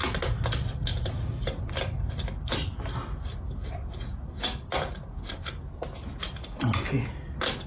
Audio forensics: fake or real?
real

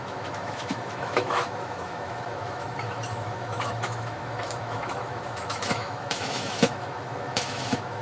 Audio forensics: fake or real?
fake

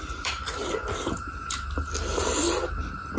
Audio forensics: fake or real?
real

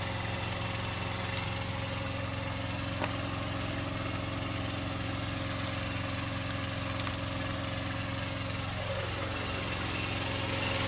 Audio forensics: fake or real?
real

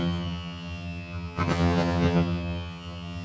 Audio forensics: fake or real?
fake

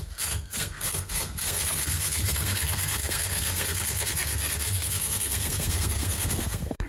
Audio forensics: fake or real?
fake